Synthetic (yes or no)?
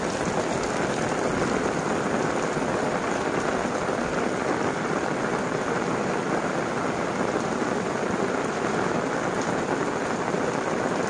no